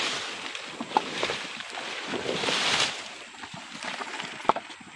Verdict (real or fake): real